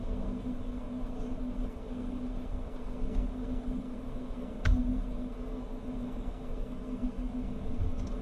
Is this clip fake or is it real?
fake